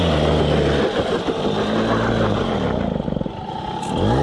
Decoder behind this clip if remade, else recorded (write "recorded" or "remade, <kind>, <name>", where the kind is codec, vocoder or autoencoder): recorded